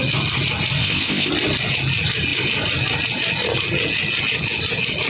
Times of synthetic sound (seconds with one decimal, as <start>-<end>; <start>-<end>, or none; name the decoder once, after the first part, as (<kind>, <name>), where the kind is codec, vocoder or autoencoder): 0.8-1.3 (codec, ZipCodec)